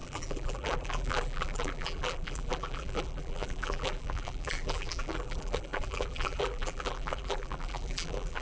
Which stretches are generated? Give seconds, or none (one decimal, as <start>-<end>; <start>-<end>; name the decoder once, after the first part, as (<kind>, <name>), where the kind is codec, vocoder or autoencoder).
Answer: 0.0-8.4 (vocoder, BigVGAN v2)